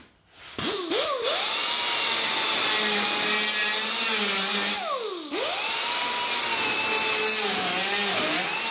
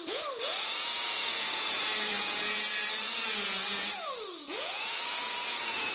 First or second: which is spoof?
second